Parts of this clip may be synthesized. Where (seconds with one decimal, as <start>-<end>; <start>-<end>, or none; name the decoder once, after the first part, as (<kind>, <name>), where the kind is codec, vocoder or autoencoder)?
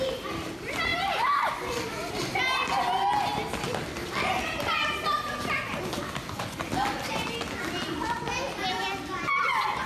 8.6-9.4 (vocoder, BigVGAN v2)